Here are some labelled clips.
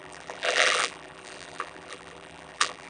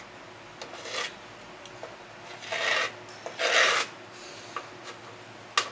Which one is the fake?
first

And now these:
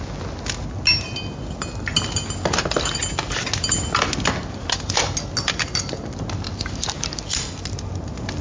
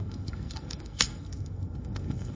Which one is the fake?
second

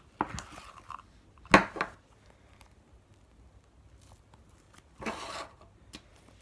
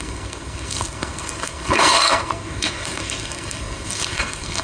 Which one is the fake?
second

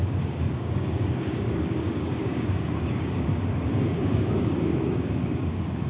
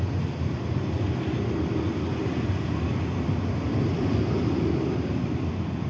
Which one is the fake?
first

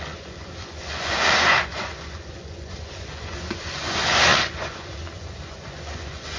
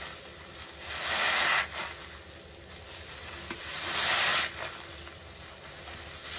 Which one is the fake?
first